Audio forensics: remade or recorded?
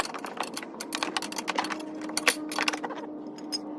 recorded